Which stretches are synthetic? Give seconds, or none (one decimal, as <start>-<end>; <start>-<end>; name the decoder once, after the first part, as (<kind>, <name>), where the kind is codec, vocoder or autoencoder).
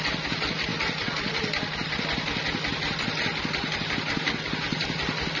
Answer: none